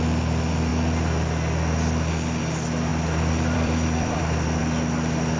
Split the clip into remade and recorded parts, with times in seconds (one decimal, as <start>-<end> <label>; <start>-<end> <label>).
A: 0.0-2.9 recorded; 2.9-4.6 remade; 4.6-5.4 recorded